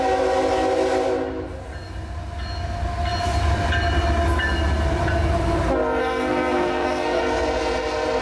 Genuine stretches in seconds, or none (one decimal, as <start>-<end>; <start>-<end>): 0.0-6.0; 7.2-8.2